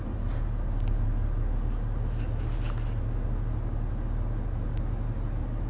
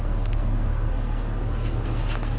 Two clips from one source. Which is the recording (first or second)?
first